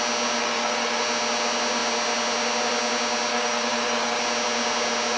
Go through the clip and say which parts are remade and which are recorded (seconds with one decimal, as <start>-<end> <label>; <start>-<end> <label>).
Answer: 0.0-0.4 recorded; 0.4-1.0 remade; 1.0-3.3 recorded; 3.3-4.2 remade; 4.2-5.2 recorded